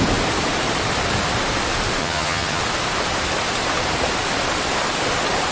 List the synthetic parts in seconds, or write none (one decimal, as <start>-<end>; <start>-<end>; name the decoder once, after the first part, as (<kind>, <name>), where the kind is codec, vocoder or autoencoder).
2.0-2.6 (vocoder, HiFi-GAN)